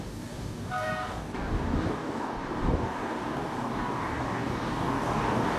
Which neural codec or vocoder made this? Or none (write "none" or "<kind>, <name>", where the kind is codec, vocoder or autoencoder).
codec, DAC